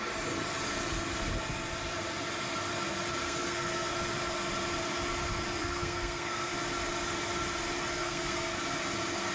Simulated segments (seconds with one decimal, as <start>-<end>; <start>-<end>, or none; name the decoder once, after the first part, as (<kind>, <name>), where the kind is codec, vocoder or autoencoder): 3.2-3.9 (codec, SNAC); 5.6-6.5; 8.0-8.6